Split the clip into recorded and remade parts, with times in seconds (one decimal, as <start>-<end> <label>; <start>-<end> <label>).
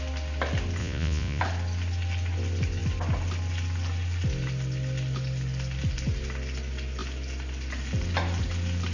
0.0-0.8 recorded; 0.8-1.4 remade; 1.4-8.9 recorded